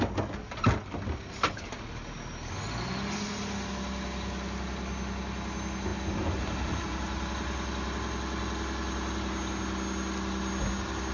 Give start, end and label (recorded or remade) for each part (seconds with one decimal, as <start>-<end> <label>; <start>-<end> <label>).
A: 0.0-11.1 recorded